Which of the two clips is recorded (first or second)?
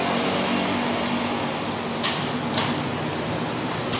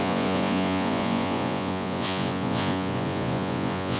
first